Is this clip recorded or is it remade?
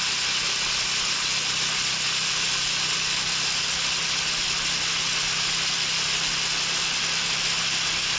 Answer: recorded